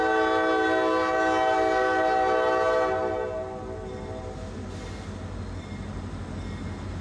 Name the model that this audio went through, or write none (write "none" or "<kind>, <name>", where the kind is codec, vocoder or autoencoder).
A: none